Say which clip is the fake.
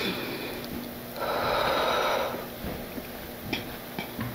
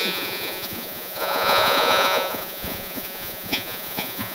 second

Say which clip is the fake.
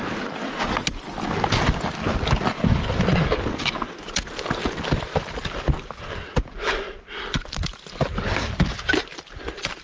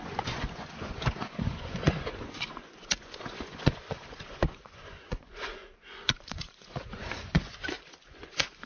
second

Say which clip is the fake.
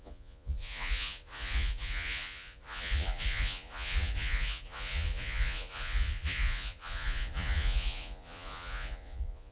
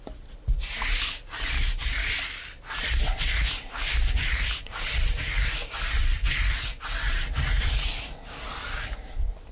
first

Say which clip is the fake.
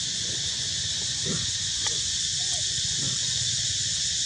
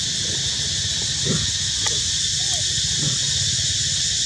first